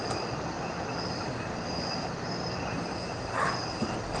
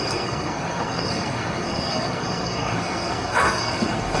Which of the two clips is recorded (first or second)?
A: first